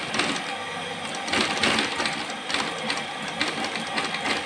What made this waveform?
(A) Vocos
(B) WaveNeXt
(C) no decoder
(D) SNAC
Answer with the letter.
C